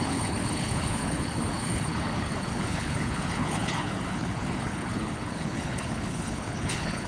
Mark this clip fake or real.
fake